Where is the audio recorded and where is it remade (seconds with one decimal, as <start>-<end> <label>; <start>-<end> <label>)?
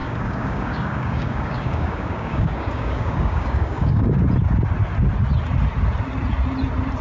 0.0-4.2 remade; 4.2-7.0 recorded